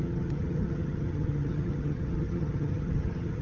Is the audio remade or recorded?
remade